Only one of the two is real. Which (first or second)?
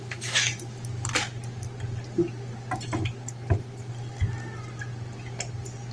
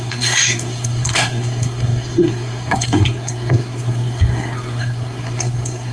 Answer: first